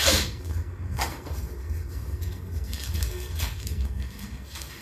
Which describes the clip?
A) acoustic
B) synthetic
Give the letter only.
B